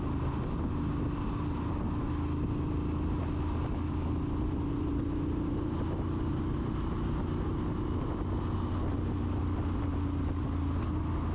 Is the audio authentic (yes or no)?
yes